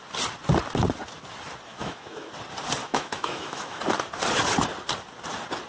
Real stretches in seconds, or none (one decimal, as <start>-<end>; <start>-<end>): 0.0-1.7; 2.3-2.8; 3.8-5.7